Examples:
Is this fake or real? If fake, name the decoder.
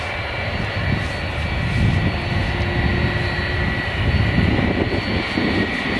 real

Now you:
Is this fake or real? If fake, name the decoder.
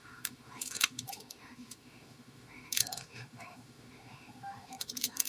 fake, autoencoder, DAC-VAE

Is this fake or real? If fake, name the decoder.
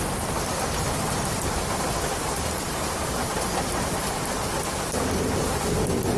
real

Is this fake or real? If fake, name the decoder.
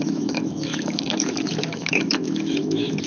fake, autoencoder, DAC-VAE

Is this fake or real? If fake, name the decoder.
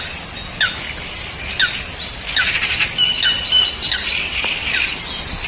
real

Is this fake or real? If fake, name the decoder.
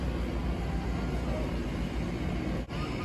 real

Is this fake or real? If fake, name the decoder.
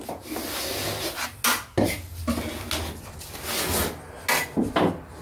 real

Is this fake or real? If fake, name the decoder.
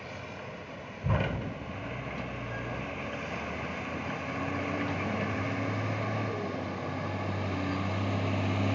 real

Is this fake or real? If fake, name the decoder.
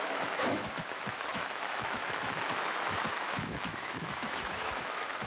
fake, autoencoder, DAC-VAE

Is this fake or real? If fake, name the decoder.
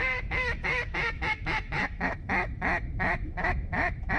fake, autoencoder, DAC-VAE